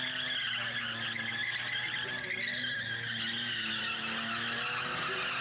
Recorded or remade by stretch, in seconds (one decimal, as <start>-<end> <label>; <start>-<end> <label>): 0.0-5.4 recorded